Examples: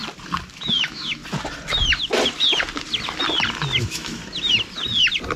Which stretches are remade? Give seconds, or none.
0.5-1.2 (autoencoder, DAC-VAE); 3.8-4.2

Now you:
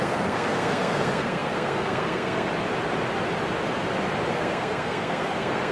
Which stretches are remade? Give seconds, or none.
0.0-2.5 (codec, SNAC); 4.3-5.7

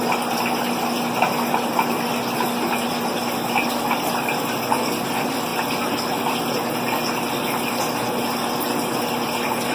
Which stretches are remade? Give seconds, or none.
none

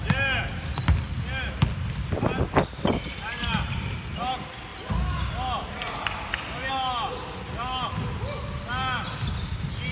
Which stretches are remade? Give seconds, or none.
none

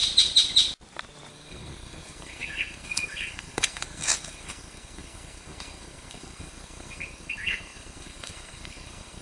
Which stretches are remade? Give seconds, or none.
1.3-9.2 (codec, SNAC)

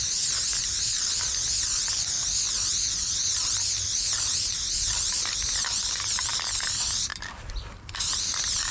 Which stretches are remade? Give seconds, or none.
7.1-8.7 (vocoder, BigVGAN v2)

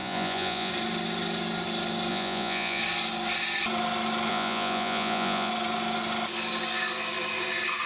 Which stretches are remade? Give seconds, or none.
0.0-0.7 (vocoder, Vocos); 2.1-2.8; 4.3-5.5

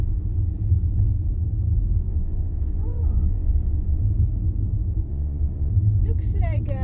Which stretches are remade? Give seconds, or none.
2.1-4.0 (vocoder, Vocos); 5.1-5.7